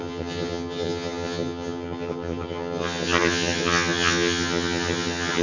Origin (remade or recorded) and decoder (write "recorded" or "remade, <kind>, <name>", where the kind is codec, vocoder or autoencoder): remade, vocoder, HiFi-GAN